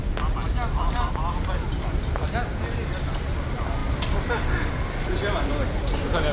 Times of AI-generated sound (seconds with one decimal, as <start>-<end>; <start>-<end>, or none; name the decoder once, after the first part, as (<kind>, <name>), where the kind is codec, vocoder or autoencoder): none